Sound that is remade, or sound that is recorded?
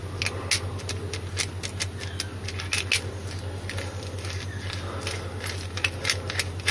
recorded